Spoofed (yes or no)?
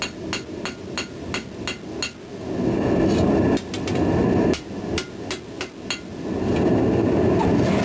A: no